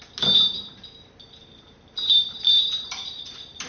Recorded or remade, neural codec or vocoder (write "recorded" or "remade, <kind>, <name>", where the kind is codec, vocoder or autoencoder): recorded